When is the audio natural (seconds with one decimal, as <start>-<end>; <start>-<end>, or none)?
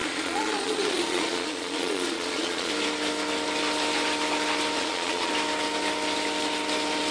2.7-4.8; 5.3-7.1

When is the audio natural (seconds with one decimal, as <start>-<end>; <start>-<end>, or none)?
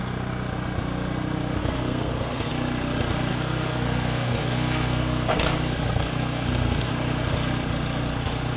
0.0-1.6; 2.5-3.3; 6.9-8.6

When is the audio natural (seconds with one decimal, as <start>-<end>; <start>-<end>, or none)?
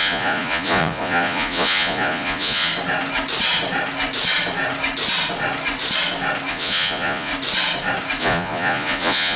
2.7-6.5; 7.3-8.2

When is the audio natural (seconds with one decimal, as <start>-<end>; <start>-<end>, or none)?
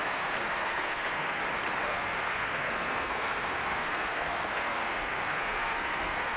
1.4-1.9